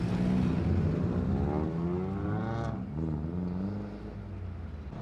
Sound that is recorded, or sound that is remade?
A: recorded